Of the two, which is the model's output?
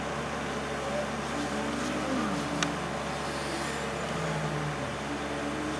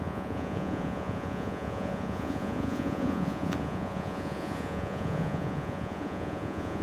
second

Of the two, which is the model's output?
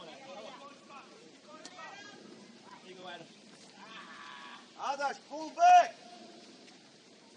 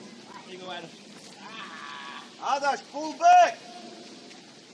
first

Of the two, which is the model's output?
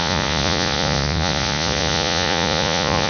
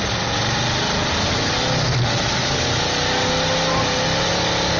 first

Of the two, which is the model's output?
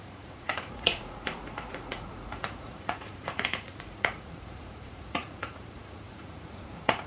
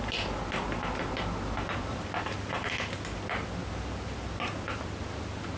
first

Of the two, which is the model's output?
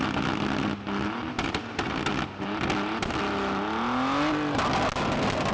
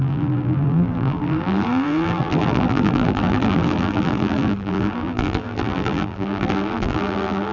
second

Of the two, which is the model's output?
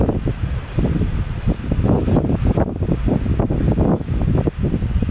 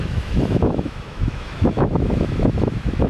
second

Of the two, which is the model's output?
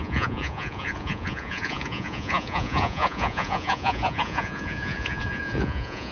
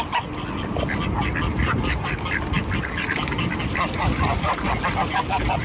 first